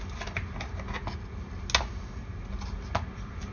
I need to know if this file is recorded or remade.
recorded